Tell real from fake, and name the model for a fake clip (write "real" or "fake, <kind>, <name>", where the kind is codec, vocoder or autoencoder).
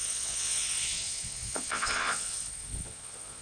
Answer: fake, vocoder, Vocos